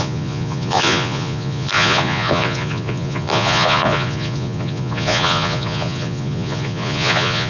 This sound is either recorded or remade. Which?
remade